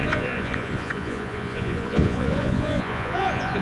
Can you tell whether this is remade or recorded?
remade